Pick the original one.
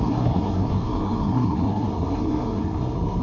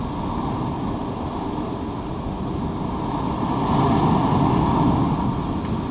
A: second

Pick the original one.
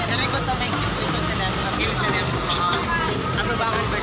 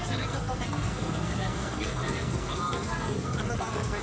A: first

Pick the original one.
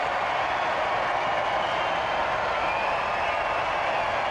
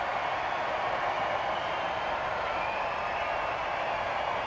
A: first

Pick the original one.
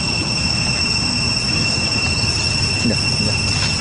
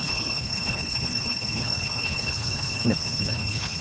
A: first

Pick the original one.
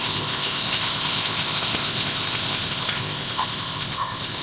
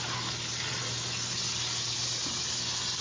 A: second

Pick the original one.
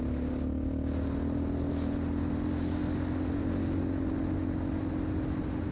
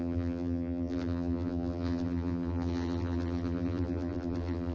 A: first